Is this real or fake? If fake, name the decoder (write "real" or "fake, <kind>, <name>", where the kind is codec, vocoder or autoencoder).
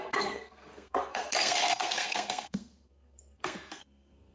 fake, codec, SNAC